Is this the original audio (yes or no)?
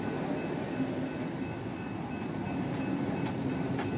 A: yes